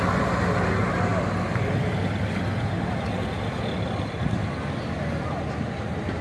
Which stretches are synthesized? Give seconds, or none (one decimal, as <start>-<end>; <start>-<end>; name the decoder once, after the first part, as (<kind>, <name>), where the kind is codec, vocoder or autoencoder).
none